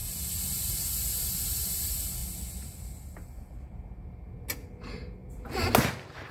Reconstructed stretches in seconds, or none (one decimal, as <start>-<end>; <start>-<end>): 0.0-1.1; 5.2-5.7